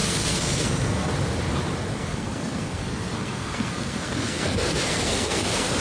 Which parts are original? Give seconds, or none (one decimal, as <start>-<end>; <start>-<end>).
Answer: 1.1-1.9